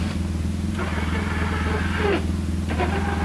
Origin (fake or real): real